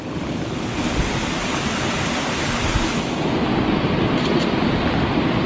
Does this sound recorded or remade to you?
recorded